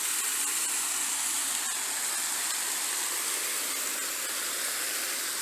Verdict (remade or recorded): recorded